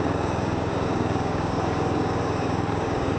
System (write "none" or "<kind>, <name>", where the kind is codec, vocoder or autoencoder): codec, DAC